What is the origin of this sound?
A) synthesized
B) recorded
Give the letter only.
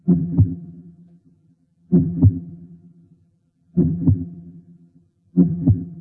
A